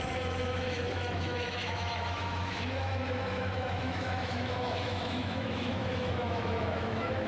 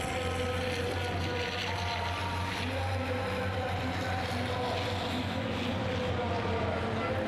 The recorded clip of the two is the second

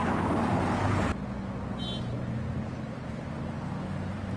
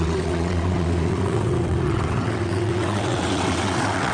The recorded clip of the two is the first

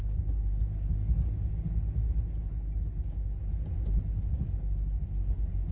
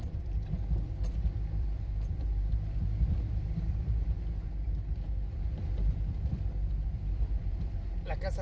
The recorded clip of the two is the first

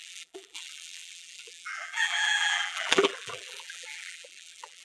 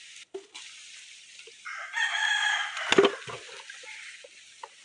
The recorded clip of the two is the second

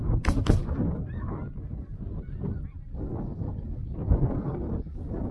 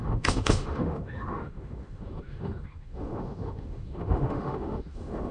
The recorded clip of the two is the first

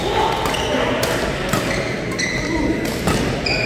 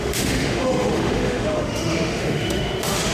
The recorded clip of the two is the first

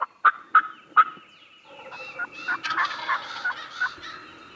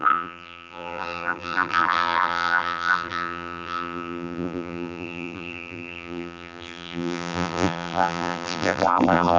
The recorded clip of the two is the first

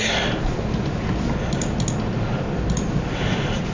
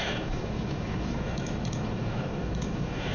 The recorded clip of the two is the first